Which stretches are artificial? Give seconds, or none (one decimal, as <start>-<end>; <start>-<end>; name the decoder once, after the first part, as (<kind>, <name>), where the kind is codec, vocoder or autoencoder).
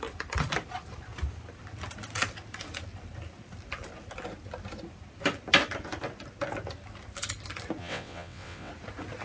7.8-8.7 (vocoder, WaveNeXt)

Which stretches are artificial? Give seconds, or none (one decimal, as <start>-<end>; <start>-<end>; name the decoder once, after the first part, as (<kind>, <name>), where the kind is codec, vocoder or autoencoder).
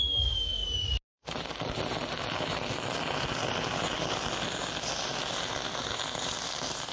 none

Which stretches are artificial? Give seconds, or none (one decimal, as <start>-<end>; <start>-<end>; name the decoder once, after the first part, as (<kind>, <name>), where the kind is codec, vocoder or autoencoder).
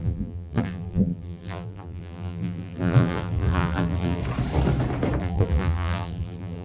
0.0-4.2 (vocoder, BigVGAN v2); 5.2-6.6